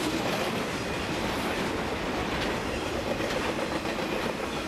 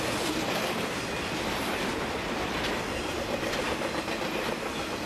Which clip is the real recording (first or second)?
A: second